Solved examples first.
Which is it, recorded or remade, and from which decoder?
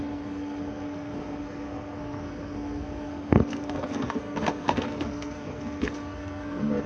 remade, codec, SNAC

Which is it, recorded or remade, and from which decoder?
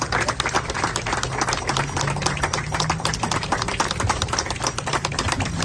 recorded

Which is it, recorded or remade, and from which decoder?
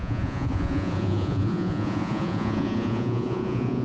remade, vocoder, Vocos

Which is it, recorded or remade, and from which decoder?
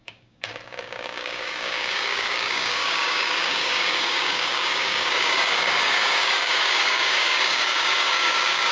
remade, codec, DAC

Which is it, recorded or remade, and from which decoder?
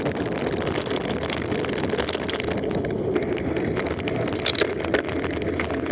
recorded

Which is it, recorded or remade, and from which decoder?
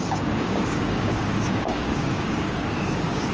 remade, codec, DAC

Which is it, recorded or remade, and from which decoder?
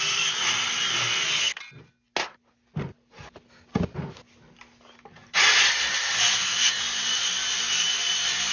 recorded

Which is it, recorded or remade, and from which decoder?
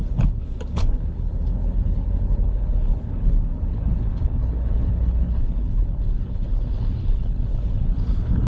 remade, codec, HILCodec